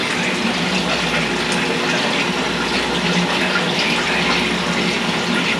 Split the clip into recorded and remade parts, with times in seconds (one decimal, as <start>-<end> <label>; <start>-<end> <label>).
0.0-5.6 recorded